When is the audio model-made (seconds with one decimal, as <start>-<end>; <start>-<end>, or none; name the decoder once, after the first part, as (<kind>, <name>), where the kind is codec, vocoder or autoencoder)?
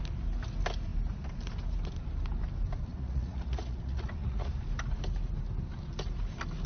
2.9-4.5 (vocoder, Vocos)